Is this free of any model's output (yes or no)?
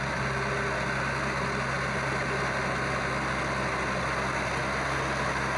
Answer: yes